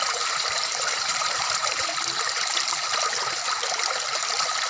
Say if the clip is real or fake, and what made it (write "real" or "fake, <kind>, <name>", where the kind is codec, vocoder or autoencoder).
fake, vocoder, BigVGAN v2